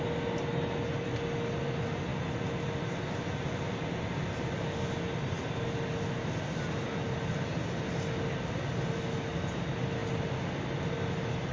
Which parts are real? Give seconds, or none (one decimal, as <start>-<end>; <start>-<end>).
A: 0.0-11.5